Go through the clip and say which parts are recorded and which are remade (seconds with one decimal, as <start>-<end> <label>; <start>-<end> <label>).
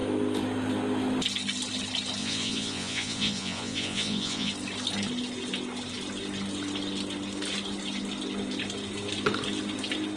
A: 0.0-2.2 recorded; 2.2-4.5 remade; 4.5-10.2 recorded